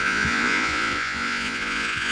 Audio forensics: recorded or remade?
remade